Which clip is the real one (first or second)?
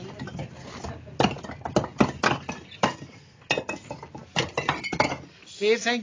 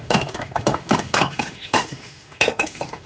first